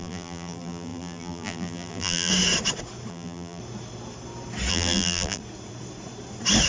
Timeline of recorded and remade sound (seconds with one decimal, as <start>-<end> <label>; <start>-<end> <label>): 0.0-2.3 remade; 2.3-3.1 recorded; 3.1-3.6 remade; 3.6-4.7 recorded; 4.7-5.4 remade; 5.4-6.7 recorded